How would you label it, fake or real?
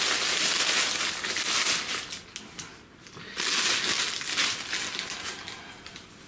real